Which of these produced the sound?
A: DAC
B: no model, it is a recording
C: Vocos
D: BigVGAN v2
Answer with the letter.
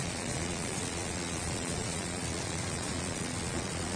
C